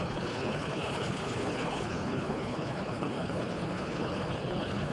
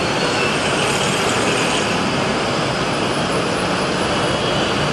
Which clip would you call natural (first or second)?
second